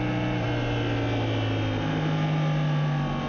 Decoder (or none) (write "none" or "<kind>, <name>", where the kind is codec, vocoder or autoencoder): none